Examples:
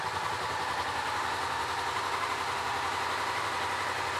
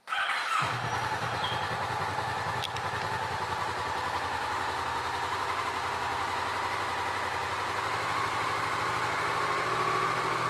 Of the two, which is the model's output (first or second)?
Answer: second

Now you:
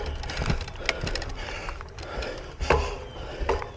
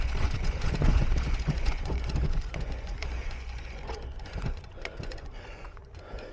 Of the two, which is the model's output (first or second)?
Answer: second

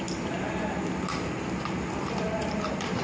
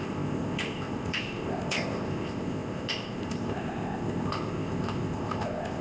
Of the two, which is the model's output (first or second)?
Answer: second